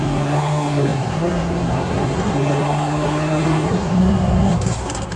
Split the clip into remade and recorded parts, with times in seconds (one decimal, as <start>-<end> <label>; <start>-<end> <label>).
0.0-5.2 remade